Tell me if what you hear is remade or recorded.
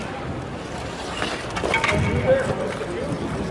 recorded